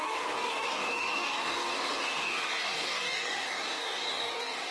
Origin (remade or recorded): remade